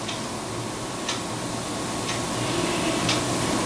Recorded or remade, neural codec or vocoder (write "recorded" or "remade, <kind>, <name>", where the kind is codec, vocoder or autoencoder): recorded